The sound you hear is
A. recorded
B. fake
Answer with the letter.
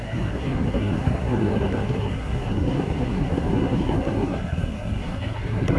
B